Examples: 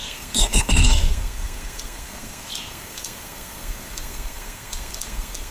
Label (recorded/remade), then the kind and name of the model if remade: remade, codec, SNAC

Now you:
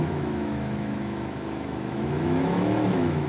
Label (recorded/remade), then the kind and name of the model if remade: remade, autoencoder, DAC-VAE